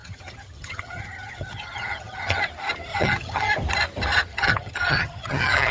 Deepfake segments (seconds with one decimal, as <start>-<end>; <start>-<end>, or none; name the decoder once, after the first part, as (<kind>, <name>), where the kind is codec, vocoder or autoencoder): 0.0-2.4 (vocoder, HiFi-GAN); 2.9-3.5; 4.3-5.7